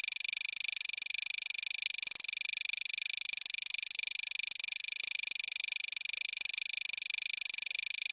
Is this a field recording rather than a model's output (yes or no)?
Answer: yes